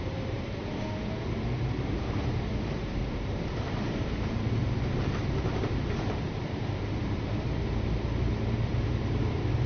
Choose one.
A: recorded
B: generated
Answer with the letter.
B